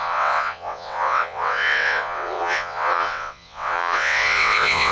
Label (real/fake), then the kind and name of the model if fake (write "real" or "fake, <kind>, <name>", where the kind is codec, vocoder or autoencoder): fake, vocoder, WaveNeXt